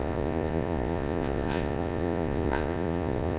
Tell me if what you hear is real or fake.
fake